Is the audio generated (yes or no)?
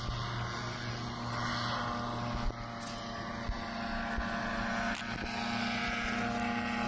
no